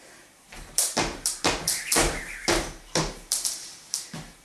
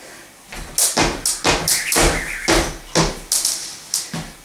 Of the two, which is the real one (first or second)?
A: second